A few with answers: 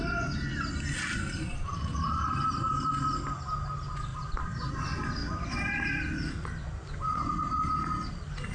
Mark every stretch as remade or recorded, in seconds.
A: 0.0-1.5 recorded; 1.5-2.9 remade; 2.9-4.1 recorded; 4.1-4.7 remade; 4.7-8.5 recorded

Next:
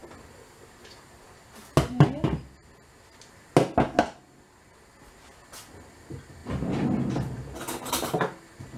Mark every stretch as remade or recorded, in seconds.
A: 0.0-8.8 recorded

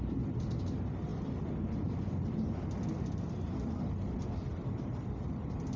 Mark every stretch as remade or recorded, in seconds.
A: 0.0-5.8 recorded